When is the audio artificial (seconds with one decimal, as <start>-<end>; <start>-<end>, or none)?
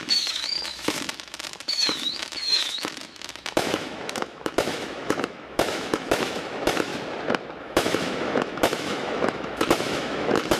0.0-6.9; 7.6-10.6